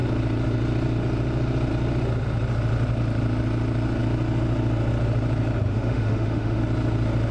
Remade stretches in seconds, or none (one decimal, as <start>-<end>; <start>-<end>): 5.7-6.6